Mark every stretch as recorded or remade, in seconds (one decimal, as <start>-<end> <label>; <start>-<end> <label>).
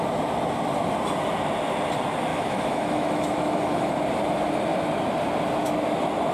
0.0-2.3 recorded; 2.3-3.9 remade; 3.9-6.3 recorded